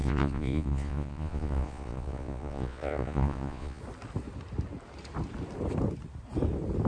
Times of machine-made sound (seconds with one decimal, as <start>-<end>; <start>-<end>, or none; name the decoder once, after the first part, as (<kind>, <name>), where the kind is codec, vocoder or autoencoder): 0.0-3.8 (vocoder, Vocos)